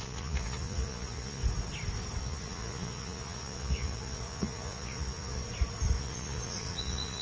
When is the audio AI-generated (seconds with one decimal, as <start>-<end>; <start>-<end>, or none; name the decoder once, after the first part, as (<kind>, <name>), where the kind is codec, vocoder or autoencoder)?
0.0-1.4 (vocoder, Vocos); 2.2-5.4; 6.0-7.2